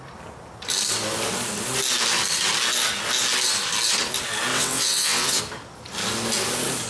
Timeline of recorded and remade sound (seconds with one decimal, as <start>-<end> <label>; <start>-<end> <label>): 0.0-4.5 recorded; 4.5-5.4 remade; 5.4-6.9 recorded